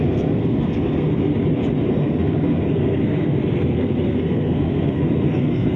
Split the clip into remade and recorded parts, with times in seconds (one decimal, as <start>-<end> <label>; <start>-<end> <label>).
0.0-1.3 remade; 1.3-1.9 recorded; 1.9-5.8 remade